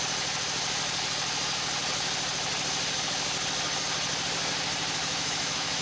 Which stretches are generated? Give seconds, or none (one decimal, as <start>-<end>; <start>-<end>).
5.0-5.8